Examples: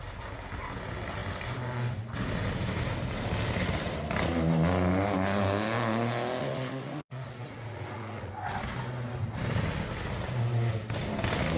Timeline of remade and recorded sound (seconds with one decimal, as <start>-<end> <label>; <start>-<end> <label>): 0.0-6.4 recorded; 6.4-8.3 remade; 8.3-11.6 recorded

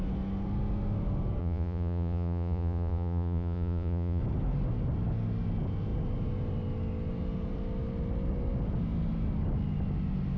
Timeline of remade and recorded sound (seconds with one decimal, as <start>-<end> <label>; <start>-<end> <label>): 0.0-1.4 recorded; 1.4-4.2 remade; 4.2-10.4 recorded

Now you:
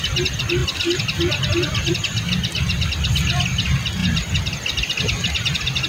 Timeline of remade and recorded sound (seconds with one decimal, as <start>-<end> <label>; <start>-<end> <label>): 0.0-5.9 recorded